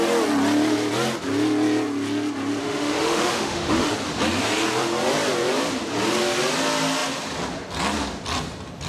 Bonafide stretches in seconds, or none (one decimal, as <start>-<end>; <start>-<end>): 0.0-2.6; 3.9-8.9